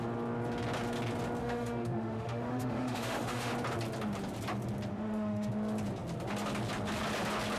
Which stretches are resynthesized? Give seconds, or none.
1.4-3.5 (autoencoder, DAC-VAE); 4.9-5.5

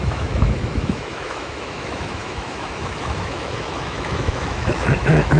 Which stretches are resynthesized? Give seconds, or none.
0.0-5.4 (autoencoder, DAC-VAE)

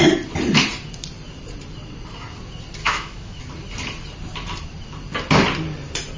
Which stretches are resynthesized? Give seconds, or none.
2.8-3.4 (autoencoder, DAC-VAE)